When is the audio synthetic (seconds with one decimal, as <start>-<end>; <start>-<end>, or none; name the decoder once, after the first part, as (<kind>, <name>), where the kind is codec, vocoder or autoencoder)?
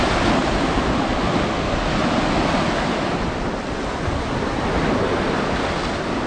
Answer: none